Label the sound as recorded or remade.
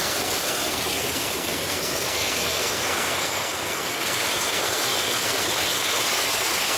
remade